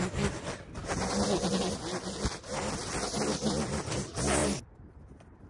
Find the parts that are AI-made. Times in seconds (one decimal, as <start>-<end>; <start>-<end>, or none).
none